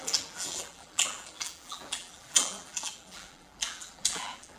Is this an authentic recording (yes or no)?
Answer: no